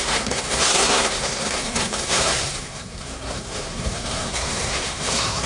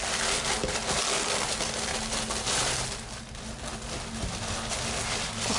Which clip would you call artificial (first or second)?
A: first